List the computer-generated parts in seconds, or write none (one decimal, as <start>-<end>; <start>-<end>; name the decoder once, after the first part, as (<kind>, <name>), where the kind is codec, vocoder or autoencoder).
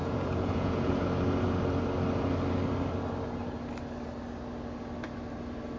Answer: 0.0-0.9 (vocoder, Vocos)